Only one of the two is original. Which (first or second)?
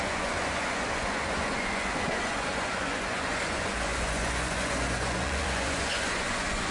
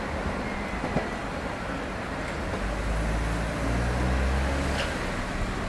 second